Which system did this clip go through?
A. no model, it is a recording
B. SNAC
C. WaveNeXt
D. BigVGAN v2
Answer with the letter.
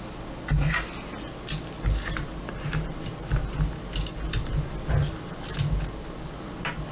A